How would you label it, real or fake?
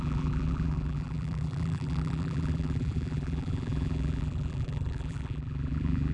fake